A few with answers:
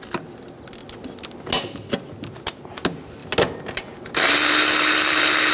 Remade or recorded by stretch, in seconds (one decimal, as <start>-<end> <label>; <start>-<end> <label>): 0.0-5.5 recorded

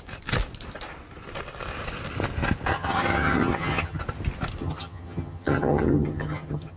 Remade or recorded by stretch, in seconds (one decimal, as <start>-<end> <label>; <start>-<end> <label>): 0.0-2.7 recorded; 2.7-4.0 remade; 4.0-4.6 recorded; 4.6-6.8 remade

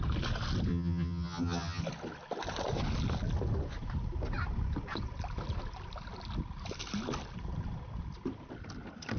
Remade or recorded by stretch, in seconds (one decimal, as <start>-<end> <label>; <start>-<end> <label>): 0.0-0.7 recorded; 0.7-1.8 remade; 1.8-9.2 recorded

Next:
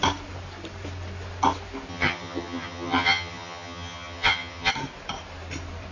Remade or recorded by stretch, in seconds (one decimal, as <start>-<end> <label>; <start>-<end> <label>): 0.0-1.9 recorded; 1.9-4.7 remade; 4.7-5.9 recorded

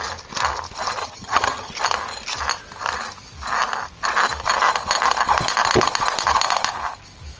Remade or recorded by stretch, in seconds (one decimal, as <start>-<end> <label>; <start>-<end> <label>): 0.0-1.0 recorded; 1.0-1.7 remade; 1.7-7.4 recorded